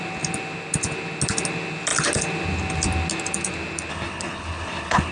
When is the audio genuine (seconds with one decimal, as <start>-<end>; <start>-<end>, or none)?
0.0-3.9